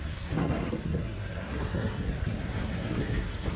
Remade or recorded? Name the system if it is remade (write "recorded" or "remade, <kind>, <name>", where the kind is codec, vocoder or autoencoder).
remade, codec, SNAC